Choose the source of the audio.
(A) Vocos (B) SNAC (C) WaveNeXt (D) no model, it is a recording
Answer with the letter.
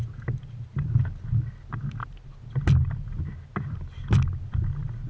D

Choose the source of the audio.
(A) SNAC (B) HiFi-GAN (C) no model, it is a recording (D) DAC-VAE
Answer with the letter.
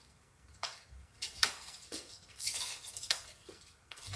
A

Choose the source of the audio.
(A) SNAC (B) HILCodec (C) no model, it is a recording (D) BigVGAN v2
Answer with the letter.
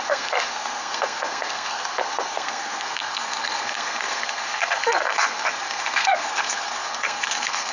A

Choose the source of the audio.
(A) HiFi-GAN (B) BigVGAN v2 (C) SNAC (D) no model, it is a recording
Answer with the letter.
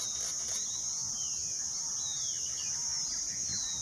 D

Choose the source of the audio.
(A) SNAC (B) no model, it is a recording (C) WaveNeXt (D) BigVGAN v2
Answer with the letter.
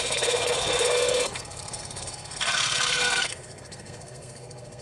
A